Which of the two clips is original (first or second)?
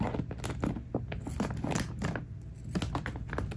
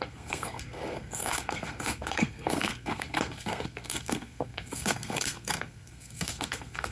first